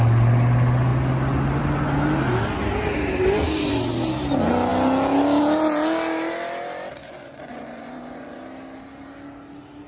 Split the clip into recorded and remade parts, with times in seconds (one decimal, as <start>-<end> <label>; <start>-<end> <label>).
0.0-7.0 recorded; 7.0-8.4 remade; 8.4-9.9 recorded